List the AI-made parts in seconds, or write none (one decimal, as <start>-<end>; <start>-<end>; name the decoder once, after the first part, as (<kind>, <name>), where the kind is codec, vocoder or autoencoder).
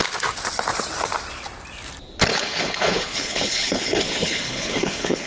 2.3-5.3 (codec, HILCodec)